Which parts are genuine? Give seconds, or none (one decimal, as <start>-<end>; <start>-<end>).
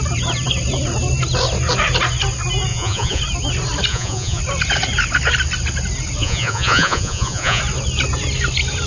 0.0-2.7; 3.2-3.9; 4.4-6.2; 7.6-8.9